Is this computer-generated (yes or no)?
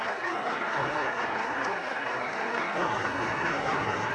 yes